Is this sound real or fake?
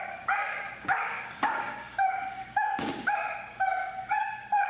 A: fake